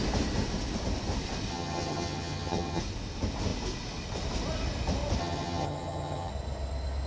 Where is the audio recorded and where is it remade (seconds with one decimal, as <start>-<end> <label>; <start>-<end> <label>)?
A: 0.0-1.5 recorded; 1.5-2.8 remade; 2.8-5.2 recorded; 5.2-6.3 remade; 6.3-7.1 recorded